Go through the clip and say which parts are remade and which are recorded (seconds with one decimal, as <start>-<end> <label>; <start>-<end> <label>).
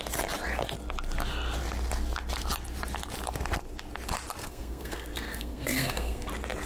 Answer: 0.0-4.4 recorded; 4.4-6.3 remade; 6.3-6.7 recorded